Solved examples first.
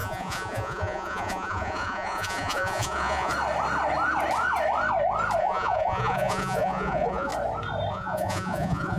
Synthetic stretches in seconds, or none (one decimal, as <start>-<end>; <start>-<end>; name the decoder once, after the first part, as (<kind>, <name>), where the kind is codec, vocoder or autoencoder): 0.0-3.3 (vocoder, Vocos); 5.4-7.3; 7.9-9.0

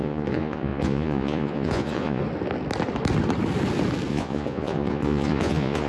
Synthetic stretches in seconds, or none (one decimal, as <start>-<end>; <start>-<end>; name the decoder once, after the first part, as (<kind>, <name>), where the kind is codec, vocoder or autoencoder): 0.0-2.2 (vocoder, Vocos); 4.1-5.9

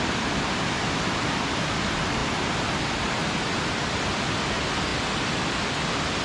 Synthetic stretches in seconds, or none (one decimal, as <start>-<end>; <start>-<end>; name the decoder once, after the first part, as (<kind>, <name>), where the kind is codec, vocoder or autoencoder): none

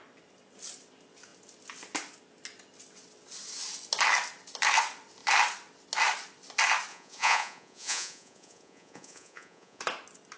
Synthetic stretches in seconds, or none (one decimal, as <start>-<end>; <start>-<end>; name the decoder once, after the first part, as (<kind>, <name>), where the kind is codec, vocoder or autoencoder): 6.9-9.8 (vocoder, Vocos)